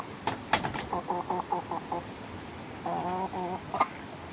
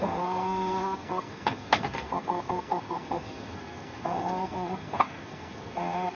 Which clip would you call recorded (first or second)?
first